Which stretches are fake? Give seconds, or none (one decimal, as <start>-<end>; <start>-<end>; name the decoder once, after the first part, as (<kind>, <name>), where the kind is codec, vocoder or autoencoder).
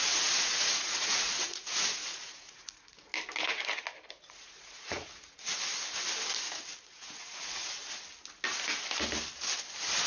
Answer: 0.0-3.1 (vocoder, Vocos); 4.1-5.5; 6.8-7.8